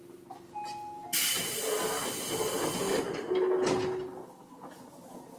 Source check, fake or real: real